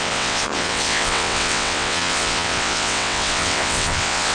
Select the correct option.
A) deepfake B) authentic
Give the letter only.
A